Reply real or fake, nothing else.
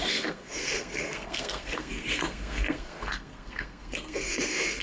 fake